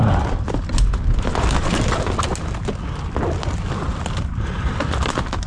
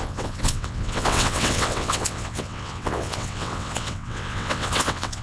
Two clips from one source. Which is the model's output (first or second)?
second